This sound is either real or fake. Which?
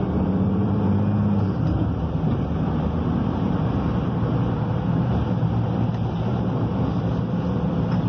fake